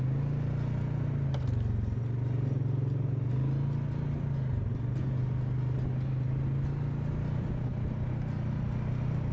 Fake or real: real